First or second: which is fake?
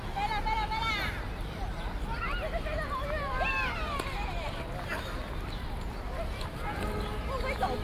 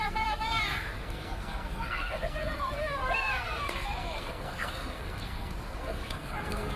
second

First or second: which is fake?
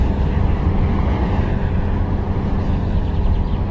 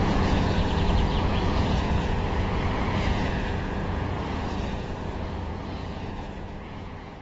second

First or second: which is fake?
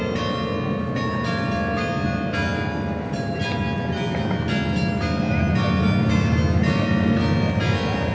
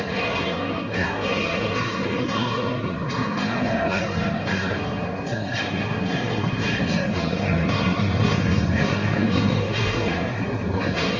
second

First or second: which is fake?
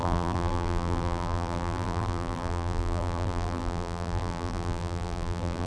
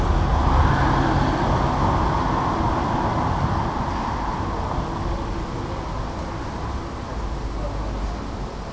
first